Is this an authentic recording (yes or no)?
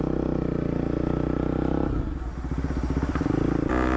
yes